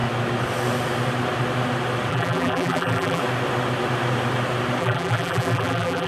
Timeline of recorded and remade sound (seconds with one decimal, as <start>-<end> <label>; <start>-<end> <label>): 0.0-2.1 recorded; 2.1-3.2 remade; 3.2-4.8 recorded; 4.8-6.1 remade